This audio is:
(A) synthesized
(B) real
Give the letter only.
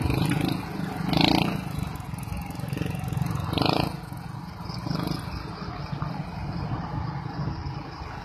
B